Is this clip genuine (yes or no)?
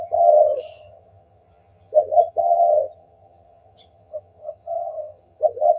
no